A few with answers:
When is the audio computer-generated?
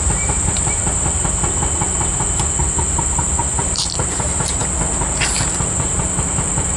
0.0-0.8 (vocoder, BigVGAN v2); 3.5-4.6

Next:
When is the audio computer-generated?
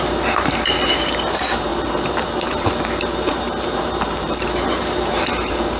0.0-5.8 (vocoder, BigVGAN v2)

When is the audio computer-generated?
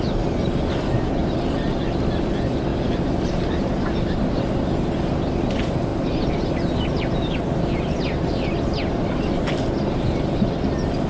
1.2-1.7 (vocoder, BigVGAN v2); 2.7-4.4